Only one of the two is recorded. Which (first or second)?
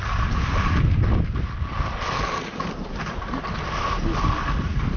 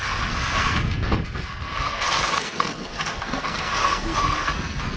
first